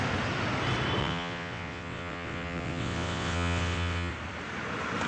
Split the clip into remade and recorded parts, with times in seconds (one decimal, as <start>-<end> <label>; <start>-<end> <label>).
0.0-1.0 recorded; 1.0-4.1 remade; 4.1-5.1 recorded